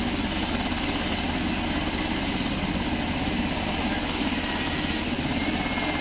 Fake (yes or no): no